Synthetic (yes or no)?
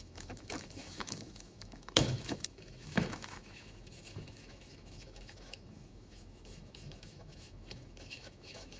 yes